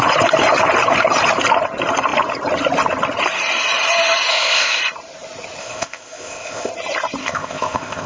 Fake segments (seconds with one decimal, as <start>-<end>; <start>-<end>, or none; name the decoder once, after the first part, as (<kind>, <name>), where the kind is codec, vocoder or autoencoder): 4.3-4.8 (codec, ZipCodec); 5.6-6.7; 7.2-8.1